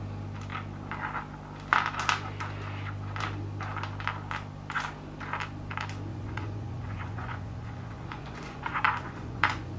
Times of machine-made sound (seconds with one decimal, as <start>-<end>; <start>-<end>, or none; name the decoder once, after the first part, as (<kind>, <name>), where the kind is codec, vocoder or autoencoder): 6.1-9.8 (vocoder, Vocos)